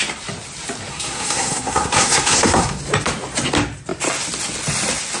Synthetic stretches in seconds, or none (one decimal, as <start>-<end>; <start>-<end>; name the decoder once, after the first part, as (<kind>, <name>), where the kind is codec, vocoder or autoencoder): 0.9-2.8 (codec, SNAC)